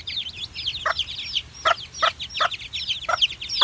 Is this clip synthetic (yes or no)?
no